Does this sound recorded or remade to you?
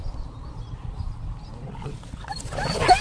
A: recorded